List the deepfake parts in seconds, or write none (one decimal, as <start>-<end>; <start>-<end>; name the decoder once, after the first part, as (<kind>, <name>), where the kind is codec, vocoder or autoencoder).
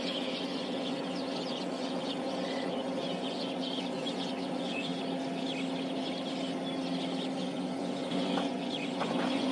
0.0-4.9 (vocoder, Vocos); 7.4-9.5